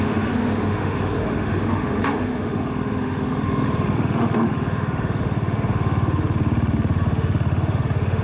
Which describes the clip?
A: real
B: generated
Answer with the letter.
B